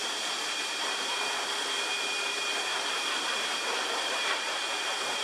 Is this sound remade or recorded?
remade